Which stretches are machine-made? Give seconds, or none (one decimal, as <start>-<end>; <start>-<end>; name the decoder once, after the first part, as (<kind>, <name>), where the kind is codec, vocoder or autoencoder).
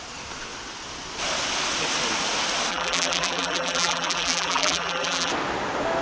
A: 2.7-5.3 (vocoder, BigVGAN v2)